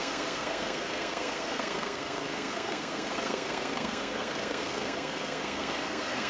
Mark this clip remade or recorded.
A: remade